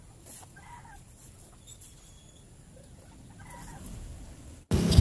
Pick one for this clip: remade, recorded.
recorded